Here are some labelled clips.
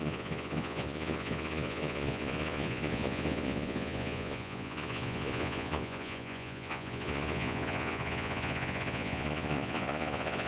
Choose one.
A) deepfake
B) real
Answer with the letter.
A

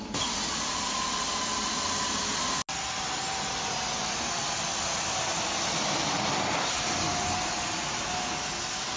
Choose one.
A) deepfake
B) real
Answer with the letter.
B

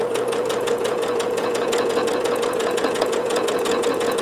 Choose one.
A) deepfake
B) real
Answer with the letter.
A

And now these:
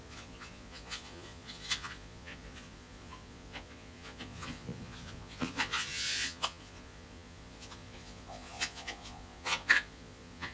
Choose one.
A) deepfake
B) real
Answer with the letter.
A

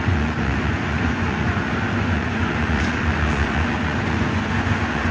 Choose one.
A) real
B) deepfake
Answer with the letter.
B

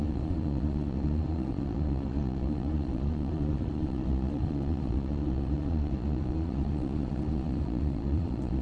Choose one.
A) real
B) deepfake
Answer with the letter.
B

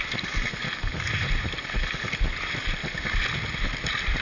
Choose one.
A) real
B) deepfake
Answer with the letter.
A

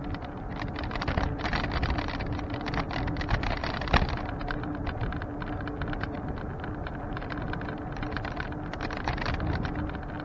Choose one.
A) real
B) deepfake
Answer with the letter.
A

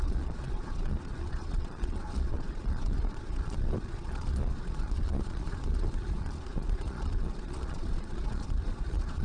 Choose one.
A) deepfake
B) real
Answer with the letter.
A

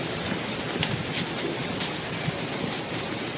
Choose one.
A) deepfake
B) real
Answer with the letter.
B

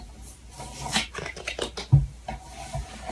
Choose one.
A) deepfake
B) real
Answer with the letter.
B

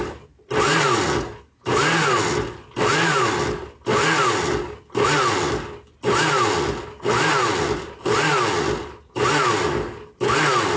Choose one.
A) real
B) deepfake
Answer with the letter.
A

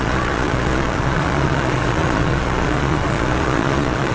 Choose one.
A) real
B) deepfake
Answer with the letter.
B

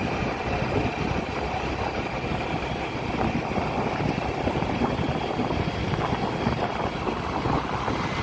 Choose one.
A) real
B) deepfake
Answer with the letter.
A